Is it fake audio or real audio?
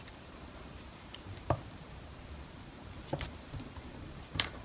fake